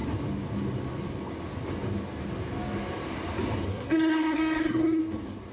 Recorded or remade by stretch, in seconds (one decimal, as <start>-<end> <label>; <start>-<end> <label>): 0.0-3.7 recorded; 3.7-5.0 remade; 5.0-5.5 recorded